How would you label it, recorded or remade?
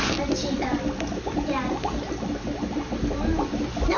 recorded